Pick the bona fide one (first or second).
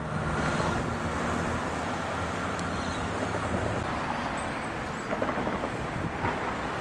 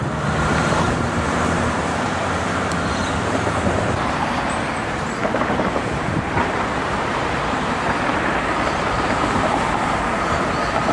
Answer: first